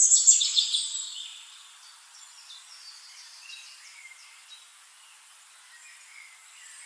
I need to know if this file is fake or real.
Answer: real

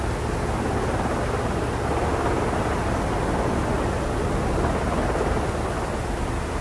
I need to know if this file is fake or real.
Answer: real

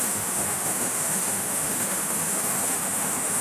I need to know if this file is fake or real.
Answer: fake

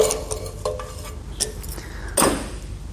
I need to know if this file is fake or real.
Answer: real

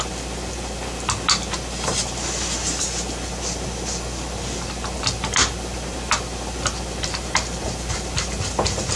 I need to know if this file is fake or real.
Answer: real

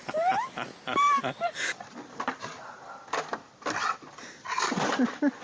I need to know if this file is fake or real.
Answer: fake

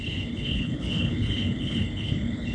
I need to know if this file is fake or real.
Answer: fake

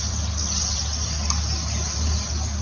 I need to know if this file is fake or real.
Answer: real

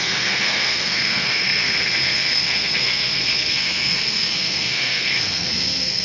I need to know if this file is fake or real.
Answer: fake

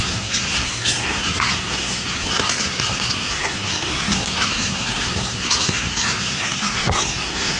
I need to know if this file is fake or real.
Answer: fake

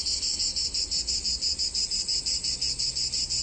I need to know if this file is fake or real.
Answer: real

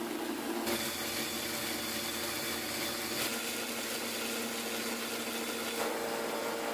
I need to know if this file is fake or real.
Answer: real